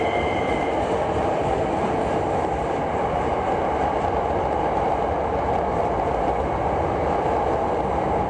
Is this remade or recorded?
recorded